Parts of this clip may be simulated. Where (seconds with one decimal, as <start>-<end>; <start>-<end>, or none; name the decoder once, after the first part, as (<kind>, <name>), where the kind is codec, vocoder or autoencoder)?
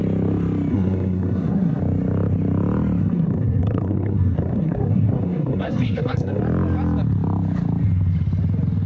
0.7-1.8 (codec, SNAC); 3.0-6.4